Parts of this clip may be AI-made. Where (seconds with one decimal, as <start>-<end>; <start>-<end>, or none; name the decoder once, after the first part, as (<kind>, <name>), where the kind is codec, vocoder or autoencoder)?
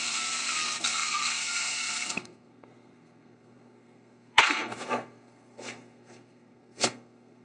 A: 0.0-7.4 (codec, SNAC)